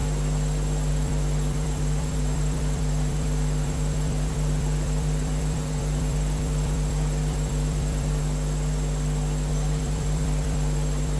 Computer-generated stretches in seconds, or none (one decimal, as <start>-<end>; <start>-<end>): 0.9-8.2; 9.5-11.2